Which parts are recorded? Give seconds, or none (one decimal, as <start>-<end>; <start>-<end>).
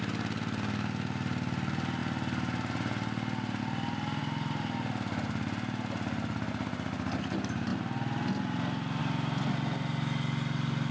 0.0-10.9